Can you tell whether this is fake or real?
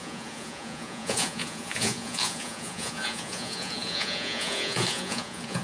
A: fake